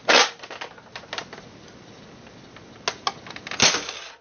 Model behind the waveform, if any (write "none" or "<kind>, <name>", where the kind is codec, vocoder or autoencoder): none